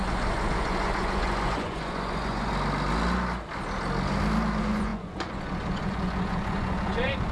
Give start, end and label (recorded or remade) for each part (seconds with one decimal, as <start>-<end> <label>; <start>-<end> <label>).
0.0-2.5 remade; 2.5-4.5 recorded; 4.5-7.3 remade